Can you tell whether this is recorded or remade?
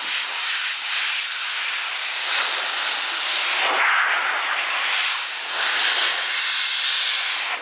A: recorded